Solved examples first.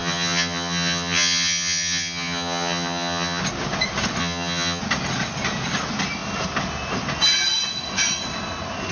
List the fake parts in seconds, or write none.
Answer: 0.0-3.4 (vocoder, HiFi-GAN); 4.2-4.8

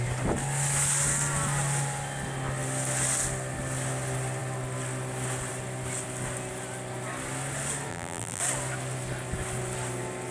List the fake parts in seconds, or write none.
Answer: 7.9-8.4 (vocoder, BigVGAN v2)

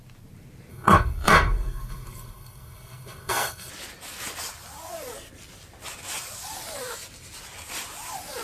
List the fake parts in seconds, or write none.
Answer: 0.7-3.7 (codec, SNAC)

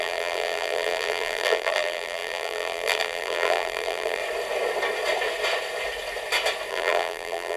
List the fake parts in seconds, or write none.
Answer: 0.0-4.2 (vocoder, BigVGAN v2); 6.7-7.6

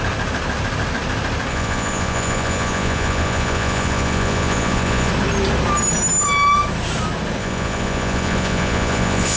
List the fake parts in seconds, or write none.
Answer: 1.5-5.1 (vocoder, Vocos); 7.4-9.4

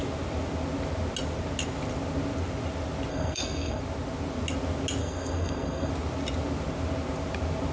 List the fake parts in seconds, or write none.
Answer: 3.1-3.8 (codec, SNAC); 5.0-5.9